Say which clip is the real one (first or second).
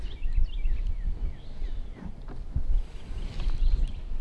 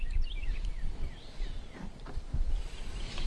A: first